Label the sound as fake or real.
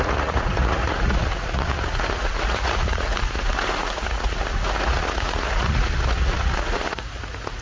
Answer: fake